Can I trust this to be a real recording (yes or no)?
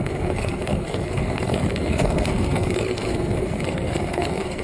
no